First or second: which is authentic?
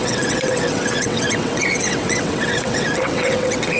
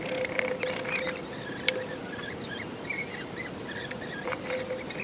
second